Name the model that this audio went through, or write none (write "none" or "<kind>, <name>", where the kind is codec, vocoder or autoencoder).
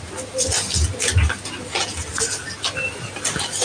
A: none